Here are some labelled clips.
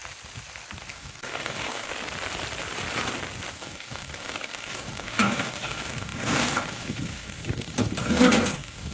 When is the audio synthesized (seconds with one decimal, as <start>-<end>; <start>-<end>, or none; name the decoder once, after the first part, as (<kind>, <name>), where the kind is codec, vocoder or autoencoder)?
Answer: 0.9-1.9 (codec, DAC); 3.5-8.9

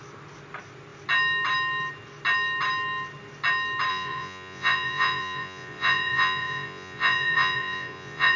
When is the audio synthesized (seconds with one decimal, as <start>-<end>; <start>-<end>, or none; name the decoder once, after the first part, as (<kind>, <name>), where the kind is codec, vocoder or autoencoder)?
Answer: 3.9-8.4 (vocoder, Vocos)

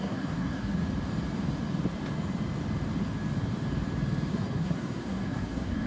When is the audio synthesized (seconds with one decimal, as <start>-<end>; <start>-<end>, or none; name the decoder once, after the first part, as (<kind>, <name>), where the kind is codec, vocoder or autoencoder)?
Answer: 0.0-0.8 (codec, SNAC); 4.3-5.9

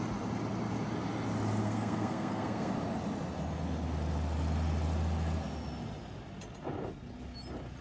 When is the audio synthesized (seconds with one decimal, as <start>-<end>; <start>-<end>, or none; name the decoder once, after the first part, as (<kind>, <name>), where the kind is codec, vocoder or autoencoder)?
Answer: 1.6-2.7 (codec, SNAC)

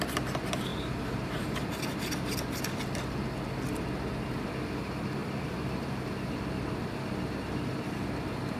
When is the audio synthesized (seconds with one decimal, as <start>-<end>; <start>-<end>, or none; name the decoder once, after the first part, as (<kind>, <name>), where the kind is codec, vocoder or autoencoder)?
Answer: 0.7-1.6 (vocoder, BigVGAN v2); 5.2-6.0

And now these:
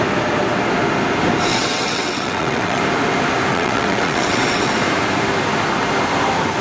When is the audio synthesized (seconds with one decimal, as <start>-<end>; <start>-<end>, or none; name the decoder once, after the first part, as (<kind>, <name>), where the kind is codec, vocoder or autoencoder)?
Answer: 1.5-2.8 (vocoder, WaveNeXt); 3.5-4.7